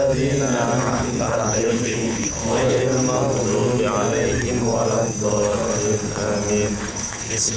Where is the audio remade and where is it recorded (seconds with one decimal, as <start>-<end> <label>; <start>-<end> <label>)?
0.0-0.9 recorded; 0.9-2.8 remade; 2.8-6.9 recorded; 6.9-7.6 remade

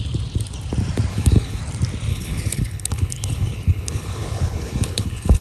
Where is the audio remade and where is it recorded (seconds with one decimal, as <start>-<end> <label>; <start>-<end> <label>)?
0.0-1.1 recorded; 1.1-1.6 remade; 1.6-2.1 recorded; 2.1-5.4 remade

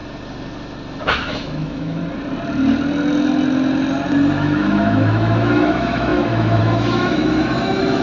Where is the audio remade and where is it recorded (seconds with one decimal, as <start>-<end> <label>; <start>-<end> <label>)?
0.0-1.0 recorded; 1.0-2.0 remade; 2.0-4.3 recorded; 4.3-8.0 remade

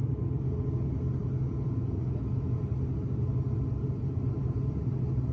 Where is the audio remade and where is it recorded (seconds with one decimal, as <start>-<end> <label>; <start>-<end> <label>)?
0.0-1.2 recorded; 1.2-2.6 remade; 2.6-5.3 recorded